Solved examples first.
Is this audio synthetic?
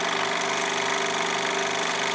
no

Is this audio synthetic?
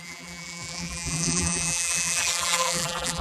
yes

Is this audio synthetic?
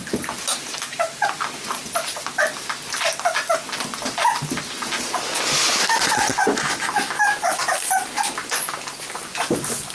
no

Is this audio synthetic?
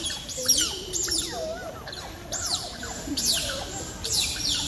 yes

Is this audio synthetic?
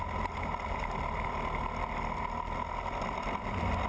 no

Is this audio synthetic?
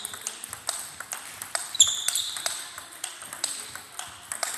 yes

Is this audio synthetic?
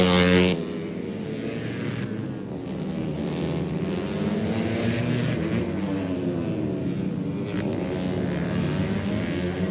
no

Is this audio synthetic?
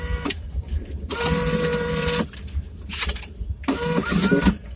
yes